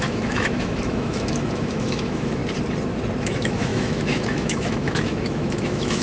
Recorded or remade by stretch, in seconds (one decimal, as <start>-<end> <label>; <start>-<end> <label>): 0.0-2.4 remade; 2.4-3.2 recorded; 3.2-6.0 remade